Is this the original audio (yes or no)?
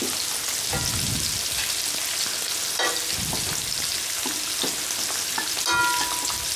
yes